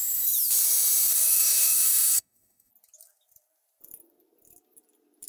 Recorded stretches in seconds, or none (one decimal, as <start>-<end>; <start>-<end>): 0.0-1.1; 2.7-5.3